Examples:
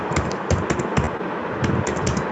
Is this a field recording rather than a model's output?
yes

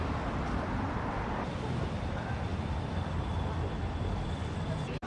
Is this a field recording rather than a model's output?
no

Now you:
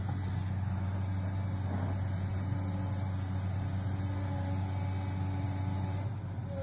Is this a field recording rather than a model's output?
yes